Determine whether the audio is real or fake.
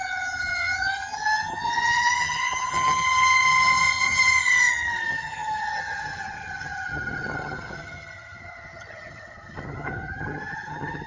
fake